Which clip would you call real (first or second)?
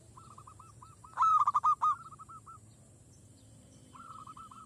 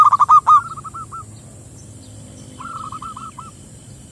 second